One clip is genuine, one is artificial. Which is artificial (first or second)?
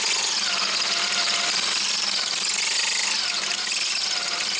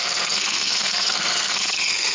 second